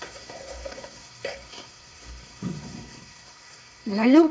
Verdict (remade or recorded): remade